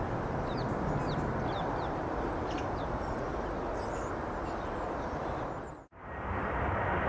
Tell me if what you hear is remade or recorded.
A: recorded